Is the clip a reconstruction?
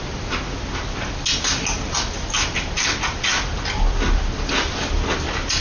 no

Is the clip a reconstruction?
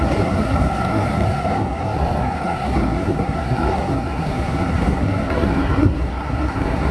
yes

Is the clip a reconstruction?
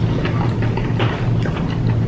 no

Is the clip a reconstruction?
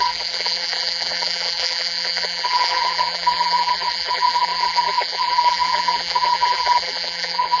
yes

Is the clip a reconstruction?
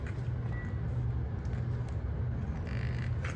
no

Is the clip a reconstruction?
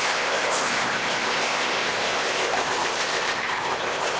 yes